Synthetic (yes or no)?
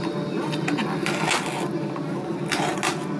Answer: no